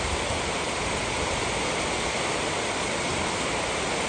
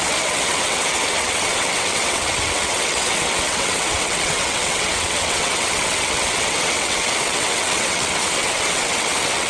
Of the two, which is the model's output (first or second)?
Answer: second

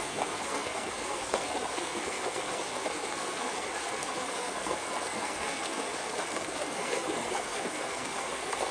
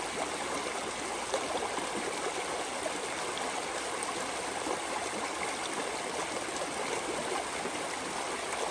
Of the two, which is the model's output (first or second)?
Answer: first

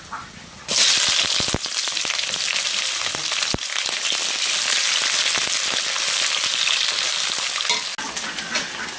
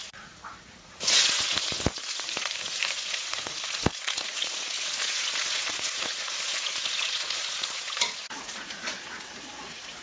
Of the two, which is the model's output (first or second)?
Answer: second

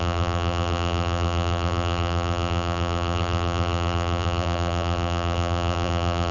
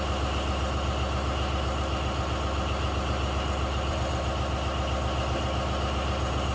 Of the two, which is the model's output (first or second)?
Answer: first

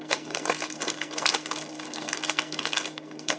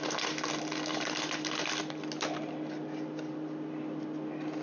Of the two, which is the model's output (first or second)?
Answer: first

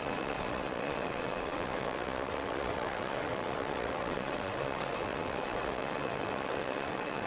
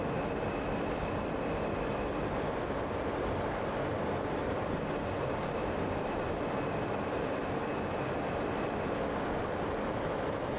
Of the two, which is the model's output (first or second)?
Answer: first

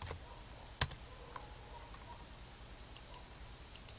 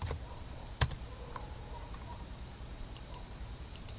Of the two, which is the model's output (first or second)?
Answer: second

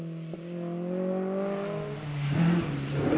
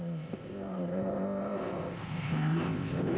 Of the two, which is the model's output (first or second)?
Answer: second